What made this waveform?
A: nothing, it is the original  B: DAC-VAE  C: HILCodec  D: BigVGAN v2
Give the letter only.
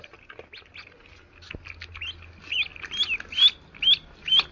A